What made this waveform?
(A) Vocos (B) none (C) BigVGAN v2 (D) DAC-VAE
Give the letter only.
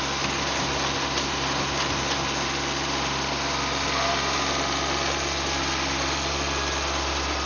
B